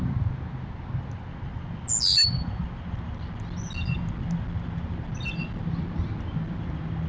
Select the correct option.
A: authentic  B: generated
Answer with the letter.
A